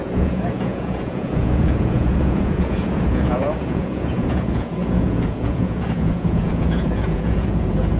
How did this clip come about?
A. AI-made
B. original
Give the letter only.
A